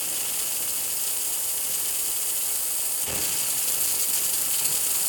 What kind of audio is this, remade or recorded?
recorded